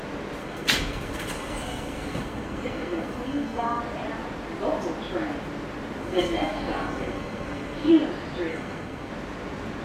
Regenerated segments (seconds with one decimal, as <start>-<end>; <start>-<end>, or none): 0.4-3.8; 6.0-7.9; 8.5-9.1